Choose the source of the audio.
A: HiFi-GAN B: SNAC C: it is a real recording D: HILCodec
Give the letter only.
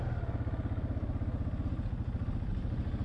C